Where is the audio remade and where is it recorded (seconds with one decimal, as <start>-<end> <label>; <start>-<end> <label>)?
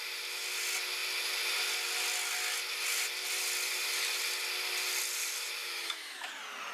0.0-5.6 recorded; 5.6-6.3 remade; 6.3-6.7 recorded